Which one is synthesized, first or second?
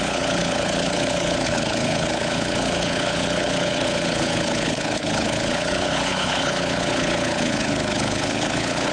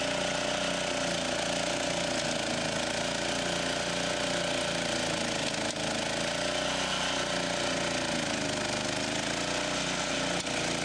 first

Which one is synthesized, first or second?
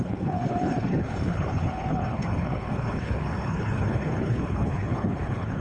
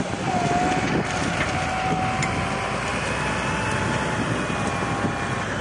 first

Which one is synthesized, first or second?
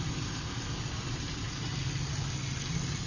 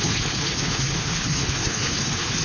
second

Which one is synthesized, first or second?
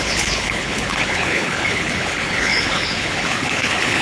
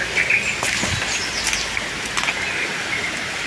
first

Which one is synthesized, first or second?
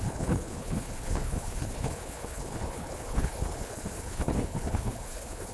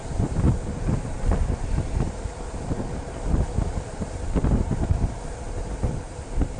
first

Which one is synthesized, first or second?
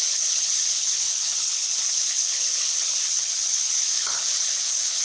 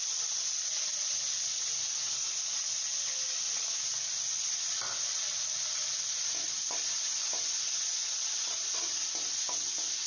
first